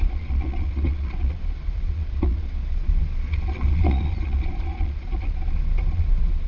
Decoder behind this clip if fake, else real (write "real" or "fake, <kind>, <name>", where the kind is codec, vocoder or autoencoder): fake, vocoder, Vocos